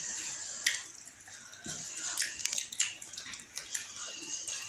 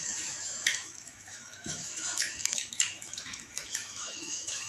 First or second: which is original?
first